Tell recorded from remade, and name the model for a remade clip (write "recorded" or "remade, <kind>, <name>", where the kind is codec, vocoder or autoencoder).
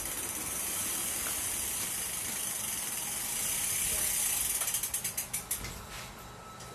recorded